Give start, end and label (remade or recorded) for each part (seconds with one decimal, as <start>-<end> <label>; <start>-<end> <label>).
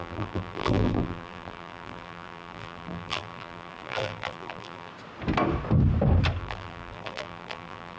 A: 0.0-4.9 remade; 4.9-6.4 recorded; 6.4-8.0 remade